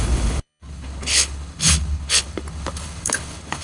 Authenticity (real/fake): fake